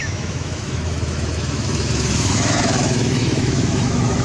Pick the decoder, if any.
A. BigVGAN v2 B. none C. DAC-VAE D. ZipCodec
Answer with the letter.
C